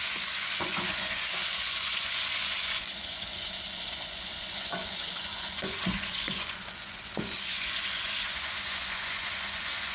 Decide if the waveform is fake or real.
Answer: fake